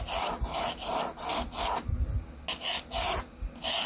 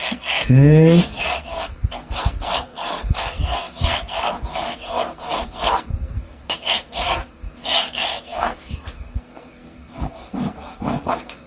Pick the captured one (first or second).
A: first